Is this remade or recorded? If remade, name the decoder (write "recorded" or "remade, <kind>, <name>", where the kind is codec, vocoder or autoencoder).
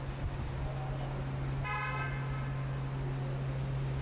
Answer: recorded